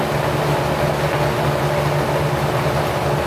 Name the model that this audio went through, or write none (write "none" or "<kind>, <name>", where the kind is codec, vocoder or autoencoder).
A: none